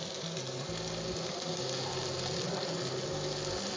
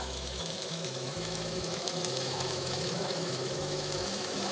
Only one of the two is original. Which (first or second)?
first